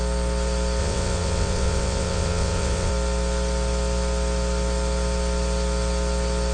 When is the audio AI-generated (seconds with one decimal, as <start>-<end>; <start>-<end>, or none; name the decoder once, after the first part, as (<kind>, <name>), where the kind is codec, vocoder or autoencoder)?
0.8-2.9 (vocoder, WaveNeXt)